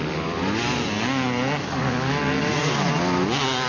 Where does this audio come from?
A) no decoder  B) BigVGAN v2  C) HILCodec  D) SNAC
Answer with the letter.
A